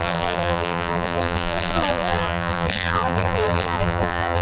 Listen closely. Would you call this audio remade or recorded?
remade